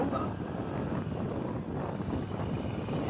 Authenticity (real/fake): real